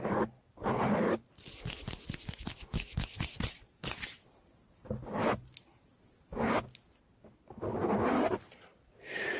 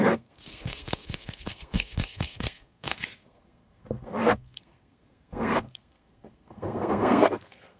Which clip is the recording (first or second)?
first